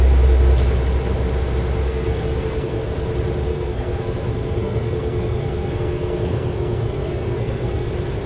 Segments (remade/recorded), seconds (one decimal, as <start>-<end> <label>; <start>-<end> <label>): 0.0-1.8 recorded; 1.8-2.8 remade; 2.8-3.5 recorded; 3.5-7.9 remade; 7.9-8.3 recorded